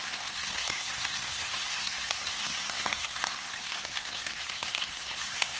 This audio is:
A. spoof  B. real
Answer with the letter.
A